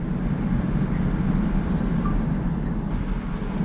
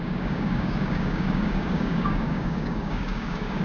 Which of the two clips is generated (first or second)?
second